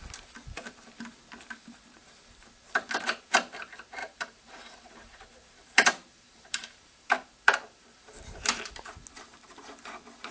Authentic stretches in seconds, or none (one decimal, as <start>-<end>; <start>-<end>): 0.0-4.0; 8.7-10.3